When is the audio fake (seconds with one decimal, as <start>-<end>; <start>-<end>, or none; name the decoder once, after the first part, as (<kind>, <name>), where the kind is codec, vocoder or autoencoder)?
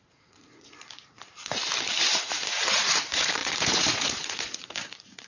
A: 0.0-1.6 (vocoder, Vocos); 2.2-5.3